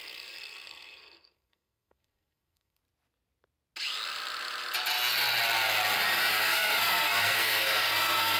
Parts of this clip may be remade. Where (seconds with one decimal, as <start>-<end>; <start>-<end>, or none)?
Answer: 0.0-2.8; 6.4-8.4